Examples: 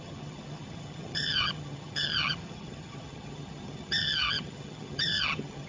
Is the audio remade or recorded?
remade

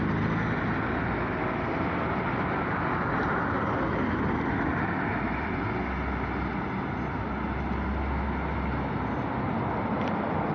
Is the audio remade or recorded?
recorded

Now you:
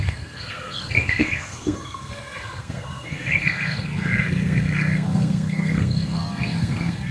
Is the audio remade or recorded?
remade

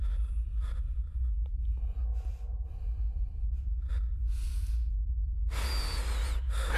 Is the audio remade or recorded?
recorded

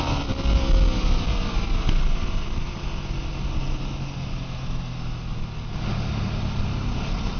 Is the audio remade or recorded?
recorded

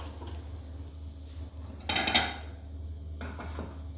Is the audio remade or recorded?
recorded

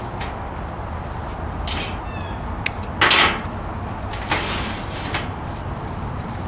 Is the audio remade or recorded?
recorded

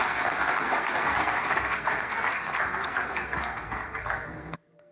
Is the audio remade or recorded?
remade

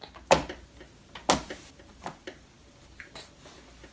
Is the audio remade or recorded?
recorded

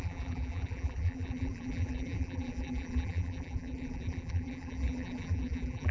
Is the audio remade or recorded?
remade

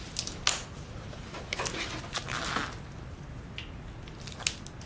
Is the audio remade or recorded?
recorded